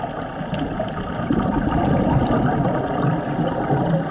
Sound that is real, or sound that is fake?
real